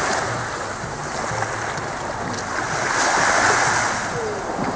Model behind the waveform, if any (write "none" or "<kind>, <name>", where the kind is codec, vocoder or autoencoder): none